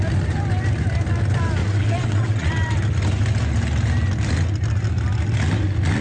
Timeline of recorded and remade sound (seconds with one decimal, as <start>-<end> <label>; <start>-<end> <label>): 0.0-1.6 recorded; 1.6-2.5 remade; 2.5-6.0 recorded